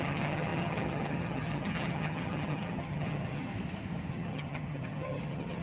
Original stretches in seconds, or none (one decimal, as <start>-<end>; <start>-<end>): 3.5-4.1